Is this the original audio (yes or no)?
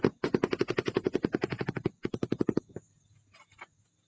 yes